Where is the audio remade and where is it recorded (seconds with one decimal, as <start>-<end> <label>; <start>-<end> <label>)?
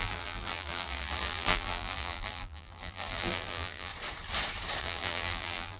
0.0-3.9 remade; 3.9-4.8 recorded; 4.8-5.8 remade